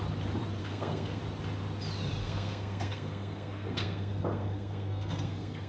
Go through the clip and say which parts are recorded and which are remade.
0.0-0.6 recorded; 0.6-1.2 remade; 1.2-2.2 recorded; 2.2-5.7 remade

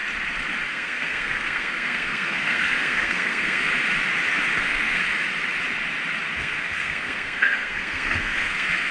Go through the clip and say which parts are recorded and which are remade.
0.0-0.7 recorded; 0.7-3.7 remade; 3.7-4.6 recorded; 4.6-5.0 remade; 5.0-6.4 recorded; 6.4-8.9 remade